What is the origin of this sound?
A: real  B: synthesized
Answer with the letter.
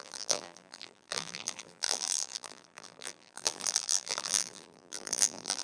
B